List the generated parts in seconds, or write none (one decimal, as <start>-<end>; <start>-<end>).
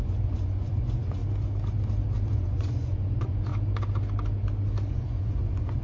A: 0.0-1.2; 2.3-3.5; 4.9-5.8